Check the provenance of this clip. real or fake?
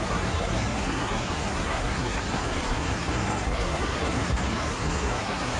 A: fake